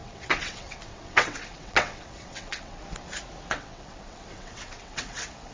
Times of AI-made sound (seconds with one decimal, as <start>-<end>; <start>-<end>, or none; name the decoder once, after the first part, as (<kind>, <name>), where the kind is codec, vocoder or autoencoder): 0.0-2.8 (vocoder, WaveNeXt); 3.5-5.5